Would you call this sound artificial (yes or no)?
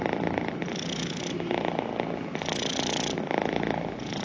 no